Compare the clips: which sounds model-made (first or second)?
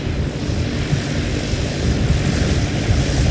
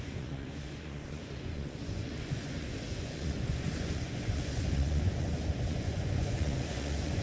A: second